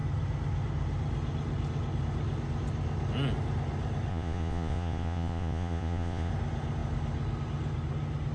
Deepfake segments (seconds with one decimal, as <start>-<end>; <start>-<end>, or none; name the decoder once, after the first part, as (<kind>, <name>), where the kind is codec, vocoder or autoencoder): 4.1-6.3 (vocoder, Vocos)